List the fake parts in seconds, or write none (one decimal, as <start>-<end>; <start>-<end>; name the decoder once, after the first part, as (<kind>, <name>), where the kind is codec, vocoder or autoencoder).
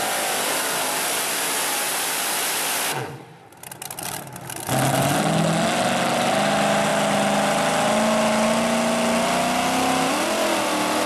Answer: none